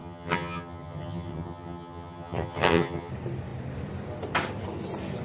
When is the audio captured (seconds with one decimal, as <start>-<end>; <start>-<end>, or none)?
3.1-5.2